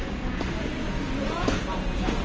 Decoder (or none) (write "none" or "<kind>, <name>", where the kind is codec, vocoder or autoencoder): vocoder, Vocos